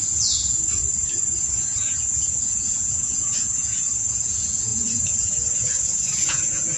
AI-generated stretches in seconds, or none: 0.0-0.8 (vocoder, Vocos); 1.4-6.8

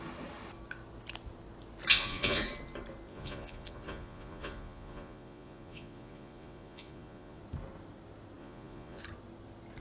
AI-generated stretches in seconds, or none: 1.9-2.4 (vocoder, Vocos); 3.1-7.4; 8.4-9.0

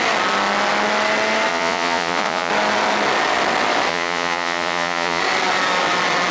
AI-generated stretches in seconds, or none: 1.5-2.5 (vocoder, Vocos); 3.9-5.2

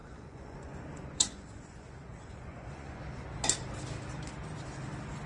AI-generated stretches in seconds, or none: 0.0-3.0 (vocoder, Vocos)